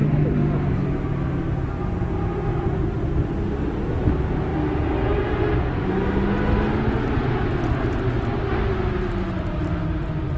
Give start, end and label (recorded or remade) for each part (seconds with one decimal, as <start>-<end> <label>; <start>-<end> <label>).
0.0-10.4 recorded